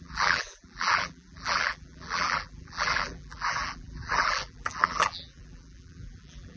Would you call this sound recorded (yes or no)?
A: no